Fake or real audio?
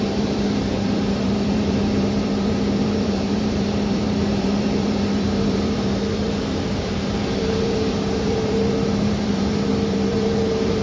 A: fake